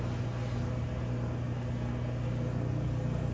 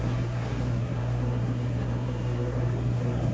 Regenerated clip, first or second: second